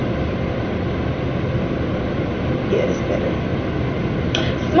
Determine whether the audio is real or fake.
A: real